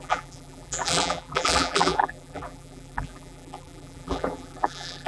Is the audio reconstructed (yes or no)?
yes